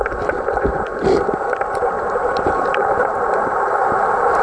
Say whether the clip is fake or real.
fake